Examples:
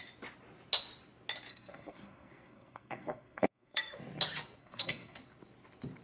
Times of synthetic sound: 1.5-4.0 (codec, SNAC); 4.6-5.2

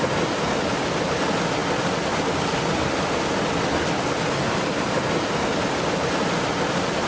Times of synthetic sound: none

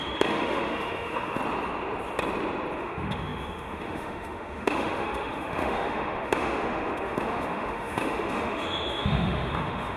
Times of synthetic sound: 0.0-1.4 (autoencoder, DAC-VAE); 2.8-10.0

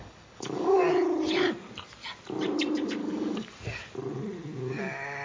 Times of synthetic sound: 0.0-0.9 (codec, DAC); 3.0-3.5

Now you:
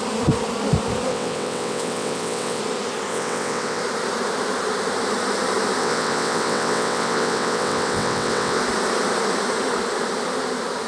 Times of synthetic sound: 1.1-2.6 (vocoder, WaveNeXt); 3.1-3.8; 5.8-8.6